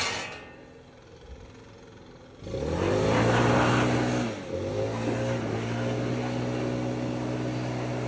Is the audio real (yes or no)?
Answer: yes